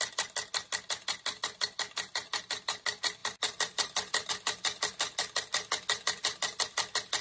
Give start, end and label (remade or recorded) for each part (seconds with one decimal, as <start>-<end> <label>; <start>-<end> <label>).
0.0-3.2 recorded; 3.2-4.3 remade; 4.3-7.2 recorded